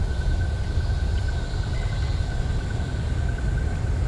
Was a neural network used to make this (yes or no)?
no